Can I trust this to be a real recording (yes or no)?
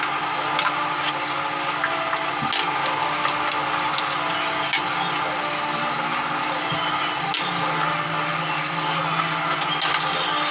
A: yes